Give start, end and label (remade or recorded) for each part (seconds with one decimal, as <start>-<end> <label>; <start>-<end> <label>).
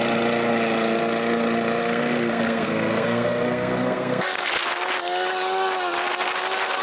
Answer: 0.0-1.8 recorded; 1.8-4.5 remade; 4.5-6.8 recorded